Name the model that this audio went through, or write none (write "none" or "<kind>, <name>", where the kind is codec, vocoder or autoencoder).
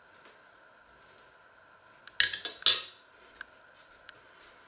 none